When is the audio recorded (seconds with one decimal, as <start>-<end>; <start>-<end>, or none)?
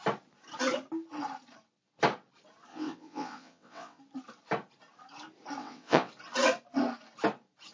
0.0-2.7; 4.0-5.6; 6.1-7.7